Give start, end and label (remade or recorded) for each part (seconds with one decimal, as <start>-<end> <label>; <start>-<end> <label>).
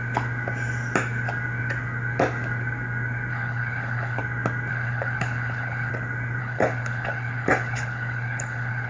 0.0-3.3 recorded; 3.3-4.2 remade; 4.2-4.7 recorded; 4.7-5.9 remade; 5.9-6.4 recorded; 6.4-8.9 remade